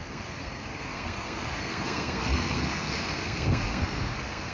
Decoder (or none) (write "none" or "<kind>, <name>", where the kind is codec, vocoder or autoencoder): codec, SNAC